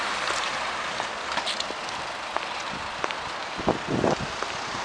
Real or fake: real